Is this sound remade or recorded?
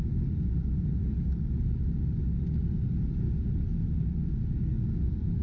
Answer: recorded